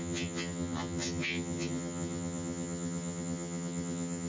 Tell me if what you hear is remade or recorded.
remade